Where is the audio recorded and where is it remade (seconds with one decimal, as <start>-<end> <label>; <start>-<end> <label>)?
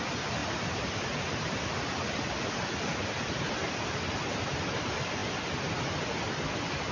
0.0-0.4 recorded; 0.4-1.6 remade; 1.6-6.9 recorded